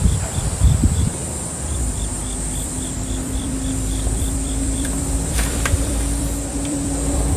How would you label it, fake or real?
fake